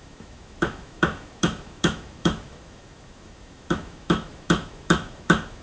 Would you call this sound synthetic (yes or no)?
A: yes